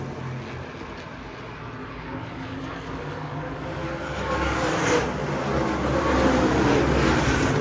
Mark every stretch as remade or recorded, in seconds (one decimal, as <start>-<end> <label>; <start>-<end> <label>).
0.0-1.8 recorded; 1.8-4.7 remade; 4.7-7.6 recorded